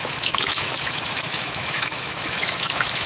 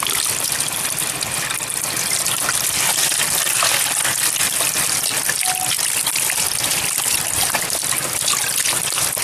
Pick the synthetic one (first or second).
first